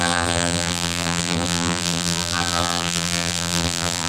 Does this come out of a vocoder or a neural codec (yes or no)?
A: yes